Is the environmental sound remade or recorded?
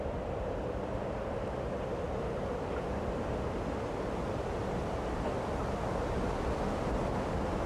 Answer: recorded